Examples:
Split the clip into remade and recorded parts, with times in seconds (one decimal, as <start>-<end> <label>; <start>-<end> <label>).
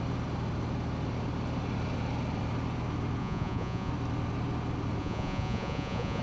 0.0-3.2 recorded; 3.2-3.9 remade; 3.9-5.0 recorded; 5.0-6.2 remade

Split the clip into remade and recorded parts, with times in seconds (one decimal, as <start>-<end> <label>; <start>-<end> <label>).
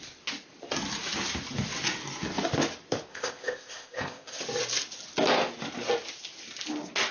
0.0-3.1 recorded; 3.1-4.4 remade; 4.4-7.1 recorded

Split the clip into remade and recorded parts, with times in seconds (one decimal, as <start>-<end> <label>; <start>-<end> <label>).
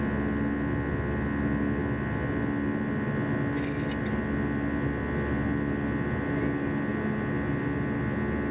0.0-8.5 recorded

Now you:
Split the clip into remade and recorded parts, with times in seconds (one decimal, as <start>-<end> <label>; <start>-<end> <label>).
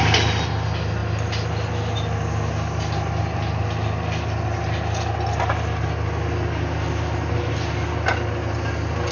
0.0-9.1 recorded